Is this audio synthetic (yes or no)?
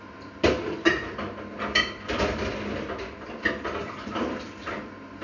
no